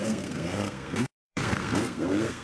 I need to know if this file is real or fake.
fake